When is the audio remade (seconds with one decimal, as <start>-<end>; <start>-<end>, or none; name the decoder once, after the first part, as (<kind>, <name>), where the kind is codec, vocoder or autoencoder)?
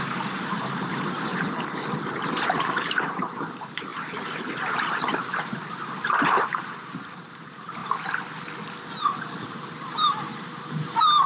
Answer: 0.0-3.9 (vocoder, BigVGAN v2); 4.7-7.8; 9.0-11.3